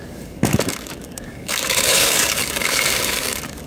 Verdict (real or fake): fake